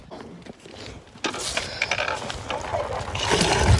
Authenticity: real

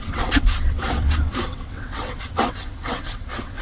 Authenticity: fake